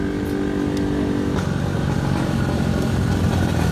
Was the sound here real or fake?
real